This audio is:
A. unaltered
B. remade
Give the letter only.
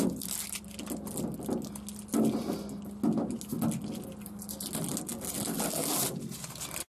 A